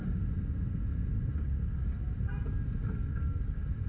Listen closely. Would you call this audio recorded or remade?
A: recorded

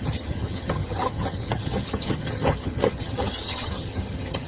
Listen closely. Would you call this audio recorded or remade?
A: remade